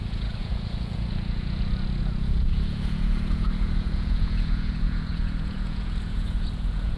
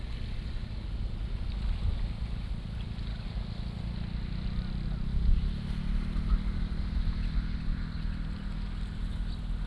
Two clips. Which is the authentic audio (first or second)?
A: second